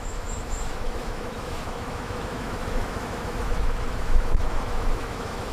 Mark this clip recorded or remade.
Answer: remade